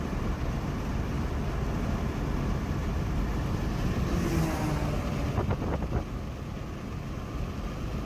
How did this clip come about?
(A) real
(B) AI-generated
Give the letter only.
A